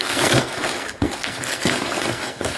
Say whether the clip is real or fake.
fake